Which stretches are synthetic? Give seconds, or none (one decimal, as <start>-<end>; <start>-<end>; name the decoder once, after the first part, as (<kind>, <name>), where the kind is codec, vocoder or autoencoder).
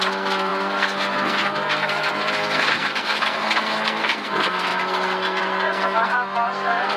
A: 0.0-7.0 (codec, SNAC)